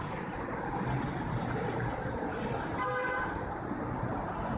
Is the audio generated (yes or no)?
no